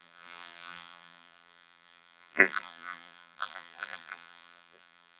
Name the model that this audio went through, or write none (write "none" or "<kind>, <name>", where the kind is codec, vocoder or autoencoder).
vocoder, BigVGAN v2